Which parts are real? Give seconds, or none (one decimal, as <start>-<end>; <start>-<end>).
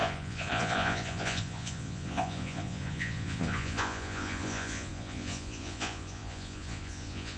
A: none